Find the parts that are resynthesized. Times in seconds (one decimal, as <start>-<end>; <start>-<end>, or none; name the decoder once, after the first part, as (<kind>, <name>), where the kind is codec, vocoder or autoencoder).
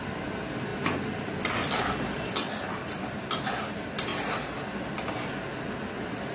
none